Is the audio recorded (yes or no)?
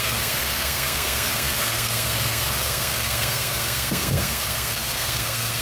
no